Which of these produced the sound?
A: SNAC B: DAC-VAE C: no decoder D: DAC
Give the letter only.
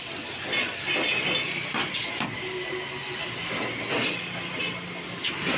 C